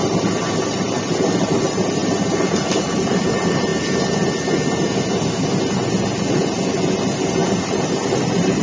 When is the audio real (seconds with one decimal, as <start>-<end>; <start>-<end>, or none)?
3.7-7.6